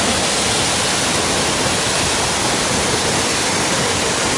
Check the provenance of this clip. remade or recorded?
recorded